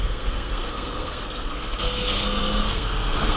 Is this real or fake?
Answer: fake